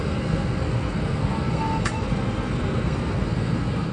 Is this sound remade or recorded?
remade